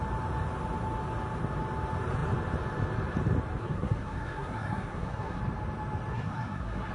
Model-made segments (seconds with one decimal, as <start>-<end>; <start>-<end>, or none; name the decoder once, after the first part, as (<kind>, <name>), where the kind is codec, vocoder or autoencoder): 3.6-5.4 (codec, SNAC); 6.1-6.9